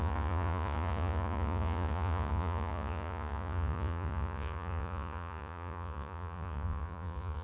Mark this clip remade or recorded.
remade